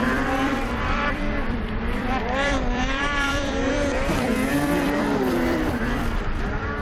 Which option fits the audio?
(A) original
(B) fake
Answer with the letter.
B